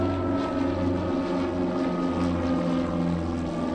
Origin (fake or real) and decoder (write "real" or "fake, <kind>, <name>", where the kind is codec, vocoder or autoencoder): real